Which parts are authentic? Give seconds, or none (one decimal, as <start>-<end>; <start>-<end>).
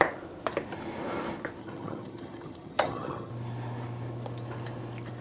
0.0-1.6; 3.3-5.2